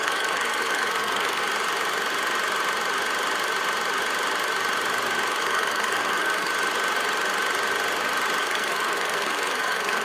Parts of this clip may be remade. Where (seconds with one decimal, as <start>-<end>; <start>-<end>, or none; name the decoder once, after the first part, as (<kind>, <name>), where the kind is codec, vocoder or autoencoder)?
0.0-1.4 (codec, SNAC); 5.4-6.5; 8.4-10.0